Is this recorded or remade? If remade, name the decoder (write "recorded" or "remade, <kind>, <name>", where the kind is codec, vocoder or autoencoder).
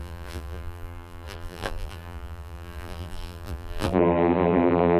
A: remade, vocoder, BigVGAN v2